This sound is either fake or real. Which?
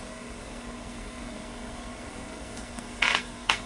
fake